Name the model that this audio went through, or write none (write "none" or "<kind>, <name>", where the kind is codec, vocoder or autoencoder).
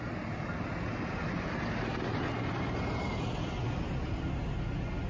none